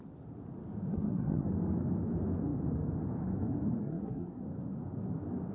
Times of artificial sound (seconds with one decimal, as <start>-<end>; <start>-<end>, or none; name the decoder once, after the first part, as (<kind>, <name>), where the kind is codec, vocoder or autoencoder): 0.9-1.5 (codec, SNAC); 3.8-4.4